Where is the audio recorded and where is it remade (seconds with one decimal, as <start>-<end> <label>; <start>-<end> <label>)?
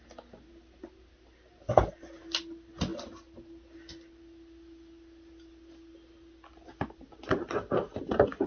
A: 0.0-8.5 recorded